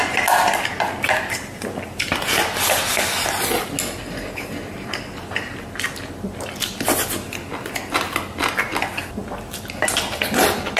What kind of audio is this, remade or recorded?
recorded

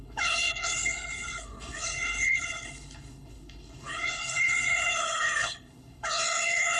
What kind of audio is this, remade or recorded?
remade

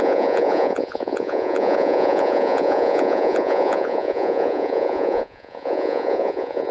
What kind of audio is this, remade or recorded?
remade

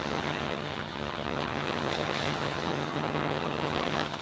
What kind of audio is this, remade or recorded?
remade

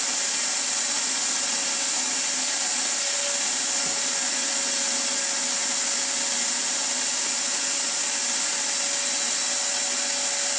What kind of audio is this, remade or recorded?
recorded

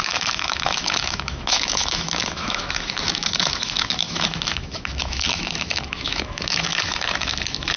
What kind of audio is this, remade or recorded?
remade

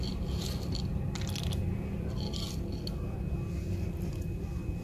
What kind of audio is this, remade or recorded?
recorded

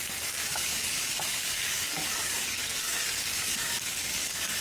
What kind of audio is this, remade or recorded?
remade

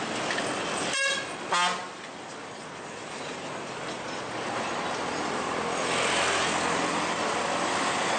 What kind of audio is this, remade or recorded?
recorded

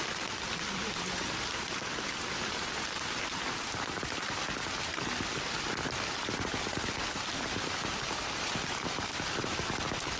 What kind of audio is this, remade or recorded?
recorded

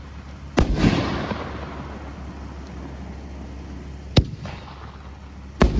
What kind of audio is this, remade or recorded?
recorded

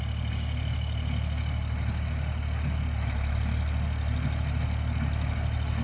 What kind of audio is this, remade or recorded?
recorded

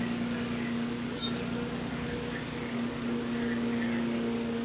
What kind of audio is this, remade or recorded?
remade